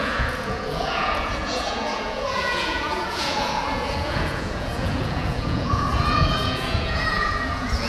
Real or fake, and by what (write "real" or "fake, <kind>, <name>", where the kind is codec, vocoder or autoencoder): fake, vocoder, Vocos